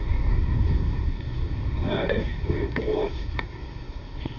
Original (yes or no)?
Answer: no